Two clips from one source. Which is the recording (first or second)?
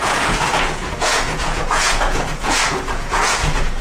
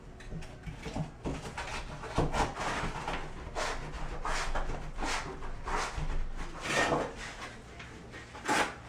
second